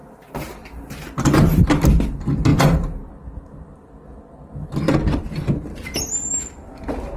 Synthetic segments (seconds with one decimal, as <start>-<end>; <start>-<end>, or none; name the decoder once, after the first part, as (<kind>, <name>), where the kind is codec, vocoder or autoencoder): 0.0-1.6 (vocoder, BigVGAN v2); 2.5-3.1